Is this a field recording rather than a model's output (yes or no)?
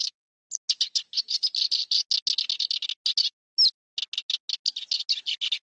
yes